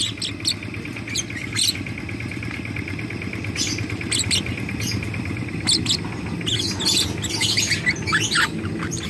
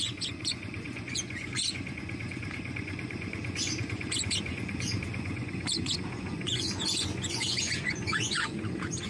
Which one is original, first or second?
first